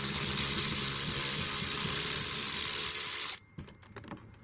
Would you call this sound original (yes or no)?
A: yes